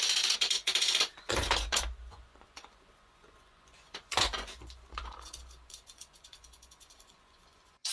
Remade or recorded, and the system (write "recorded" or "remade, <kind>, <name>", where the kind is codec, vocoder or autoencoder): remade, vocoder, Vocos